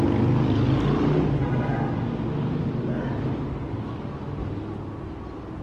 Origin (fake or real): real